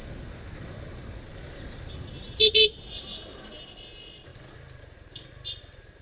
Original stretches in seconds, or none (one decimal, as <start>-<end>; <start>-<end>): 0.0-6.0